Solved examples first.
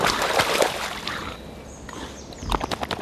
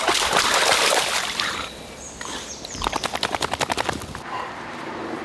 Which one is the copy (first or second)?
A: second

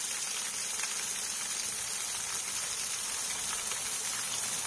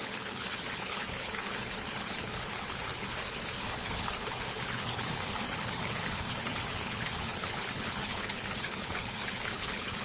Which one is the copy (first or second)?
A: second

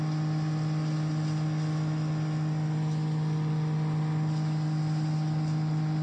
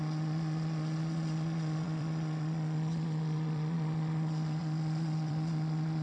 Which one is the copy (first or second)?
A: second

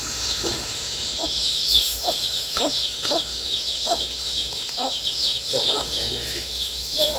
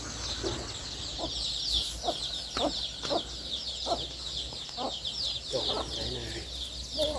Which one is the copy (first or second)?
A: first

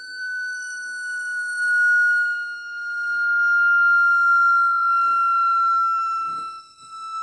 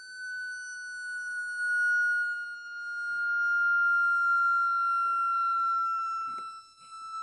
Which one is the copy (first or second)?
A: first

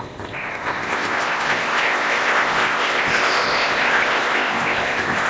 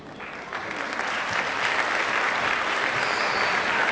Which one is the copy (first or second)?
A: first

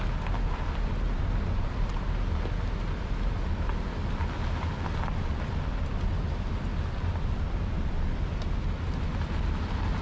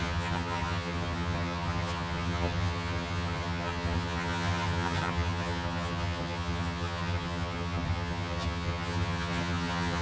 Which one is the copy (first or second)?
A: second